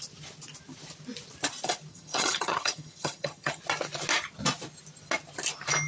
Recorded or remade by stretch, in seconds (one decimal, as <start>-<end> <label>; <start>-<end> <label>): 0.0-1.9 recorded; 1.9-3.6 remade; 3.6-5.9 recorded